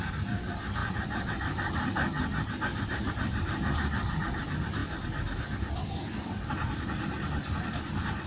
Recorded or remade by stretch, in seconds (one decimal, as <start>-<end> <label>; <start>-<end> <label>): 0.0-0.8 recorded; 0.8-1.3 remade; 1.3-2.7 recorded; 2.7-3.8 remade; 3.8-8.3 recorded